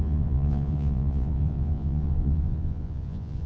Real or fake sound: fake